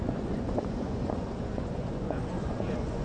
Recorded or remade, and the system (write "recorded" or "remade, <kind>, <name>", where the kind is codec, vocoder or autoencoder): remade, vocoder, Vocos